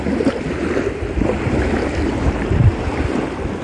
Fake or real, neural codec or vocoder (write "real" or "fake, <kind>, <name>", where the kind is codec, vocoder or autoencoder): real